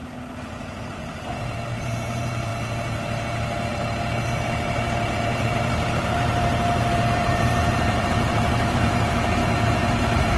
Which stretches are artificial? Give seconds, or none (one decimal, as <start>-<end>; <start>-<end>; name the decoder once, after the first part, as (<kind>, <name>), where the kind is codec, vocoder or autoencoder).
1.7-2.5 (vocoder, BigVGAN v2); 3.7-9.4; 10.0-10.4